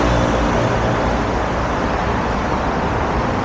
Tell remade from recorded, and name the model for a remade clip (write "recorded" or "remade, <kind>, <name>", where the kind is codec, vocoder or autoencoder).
recorded